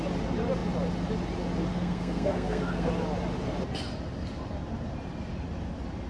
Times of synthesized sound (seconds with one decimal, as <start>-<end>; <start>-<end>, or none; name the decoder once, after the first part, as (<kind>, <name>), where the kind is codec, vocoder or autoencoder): 1.7-2.9 (codec, SNAC)